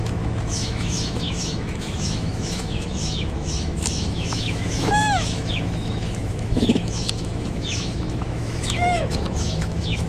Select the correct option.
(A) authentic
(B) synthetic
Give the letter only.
B